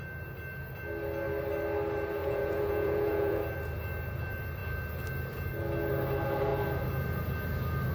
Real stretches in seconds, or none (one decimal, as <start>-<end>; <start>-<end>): 0.0-2.2; 3.4-7.9